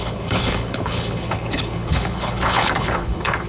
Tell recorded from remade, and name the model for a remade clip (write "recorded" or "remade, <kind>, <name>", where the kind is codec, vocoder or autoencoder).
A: remade, codec, HILCodec